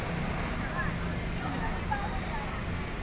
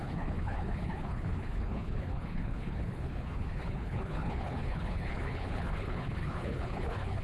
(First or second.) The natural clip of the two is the first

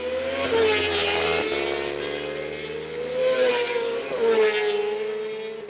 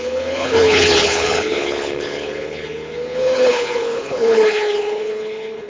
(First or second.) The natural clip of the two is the first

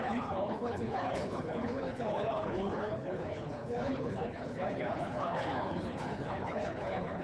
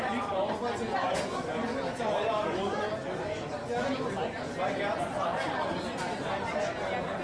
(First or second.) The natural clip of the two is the second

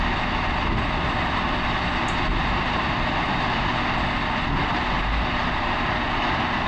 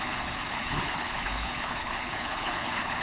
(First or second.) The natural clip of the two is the first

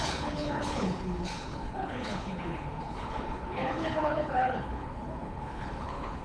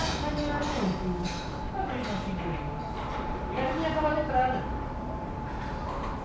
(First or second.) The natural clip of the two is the second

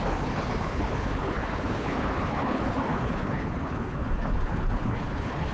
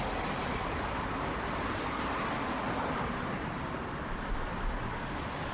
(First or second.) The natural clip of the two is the second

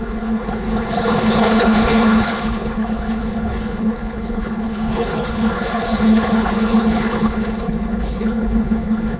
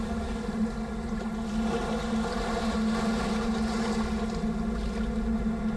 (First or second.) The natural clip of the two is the second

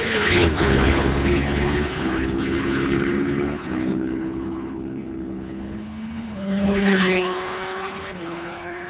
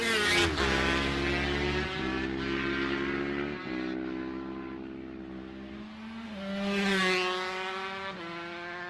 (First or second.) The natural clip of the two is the second